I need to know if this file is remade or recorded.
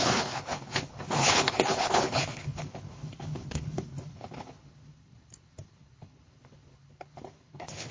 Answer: remade